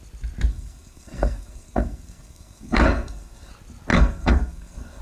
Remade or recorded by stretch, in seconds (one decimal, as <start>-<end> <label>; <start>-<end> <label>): 0.0-0.5 recorded; 0.5-3.5 remade; 3.5-3.9 recorded; 3.9-5.0 remade